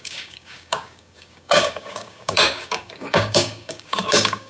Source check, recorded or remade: remade